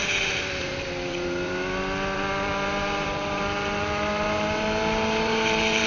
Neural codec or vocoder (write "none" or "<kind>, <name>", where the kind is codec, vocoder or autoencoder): vocoder, BigVGAN v2